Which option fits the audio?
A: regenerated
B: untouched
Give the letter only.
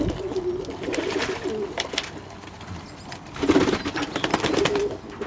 B